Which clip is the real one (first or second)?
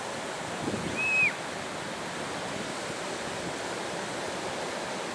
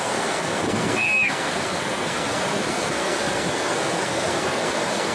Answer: first